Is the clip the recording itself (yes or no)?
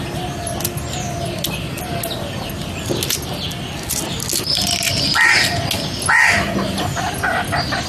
yes